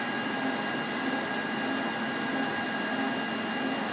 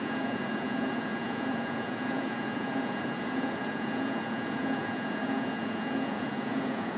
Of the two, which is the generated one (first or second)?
second